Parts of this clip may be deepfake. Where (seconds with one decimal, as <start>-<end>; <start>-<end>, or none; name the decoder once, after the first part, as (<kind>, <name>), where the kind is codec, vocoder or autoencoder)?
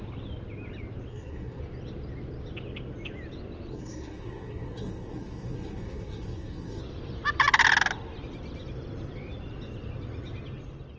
1.1-1.6 (codec, SNAC); 3.7-6.8